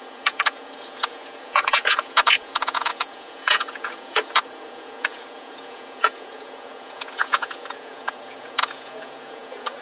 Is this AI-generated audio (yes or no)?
yes